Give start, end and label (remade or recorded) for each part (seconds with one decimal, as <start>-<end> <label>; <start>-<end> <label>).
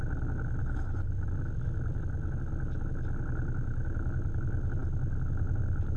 0.0-0.6 recorded; 0.6-1.1 remade; 1.1-6.0 recorded